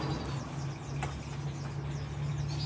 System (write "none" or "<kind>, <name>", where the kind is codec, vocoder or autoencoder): none